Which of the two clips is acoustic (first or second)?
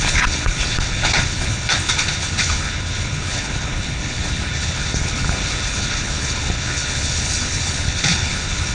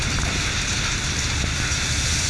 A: second